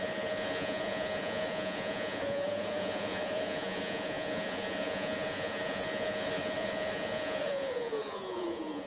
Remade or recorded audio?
remade